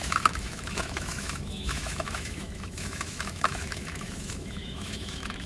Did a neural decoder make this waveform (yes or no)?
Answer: yes